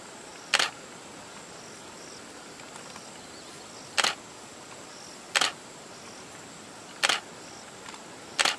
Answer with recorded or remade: recorded